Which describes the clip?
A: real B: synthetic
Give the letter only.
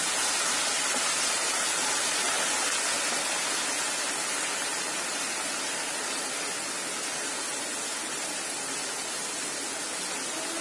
A